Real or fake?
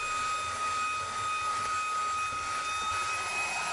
real